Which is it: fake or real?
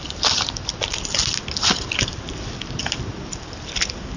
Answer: real